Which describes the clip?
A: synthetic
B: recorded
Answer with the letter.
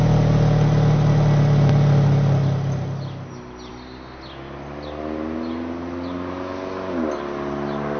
B